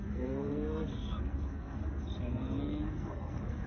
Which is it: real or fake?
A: fake